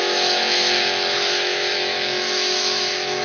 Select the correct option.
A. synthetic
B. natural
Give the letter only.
A